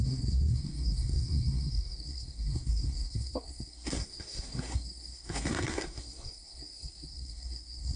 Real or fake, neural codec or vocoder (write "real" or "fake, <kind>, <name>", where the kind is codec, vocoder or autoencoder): fake, codec, SNAC